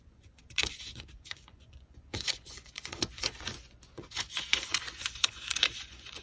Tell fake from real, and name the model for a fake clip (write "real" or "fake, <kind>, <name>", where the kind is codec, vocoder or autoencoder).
fake, vocoder, Vocos